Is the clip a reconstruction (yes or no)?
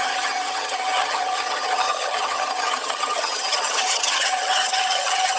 yes